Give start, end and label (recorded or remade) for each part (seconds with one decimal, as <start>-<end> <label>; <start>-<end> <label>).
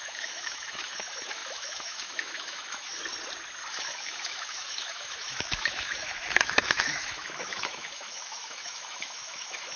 0.0-3.0 remade; 3.0-3.7 recorded; 3.7-9.8 remade